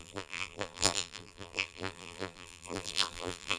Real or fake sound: fake